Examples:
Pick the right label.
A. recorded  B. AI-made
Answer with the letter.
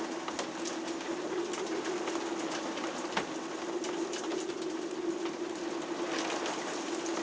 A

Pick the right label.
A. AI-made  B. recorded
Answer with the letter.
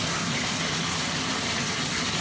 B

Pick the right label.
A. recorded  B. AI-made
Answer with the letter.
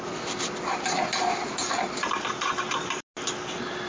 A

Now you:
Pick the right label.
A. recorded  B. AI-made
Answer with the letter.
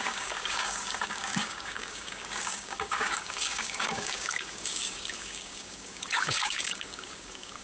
B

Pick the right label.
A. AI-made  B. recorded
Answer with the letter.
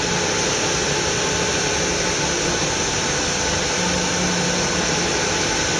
B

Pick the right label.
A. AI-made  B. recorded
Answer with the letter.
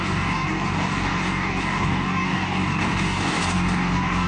A